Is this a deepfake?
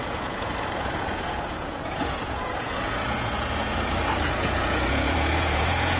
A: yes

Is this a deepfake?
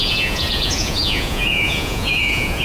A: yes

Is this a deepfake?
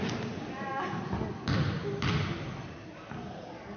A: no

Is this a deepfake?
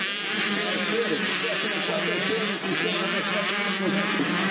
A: no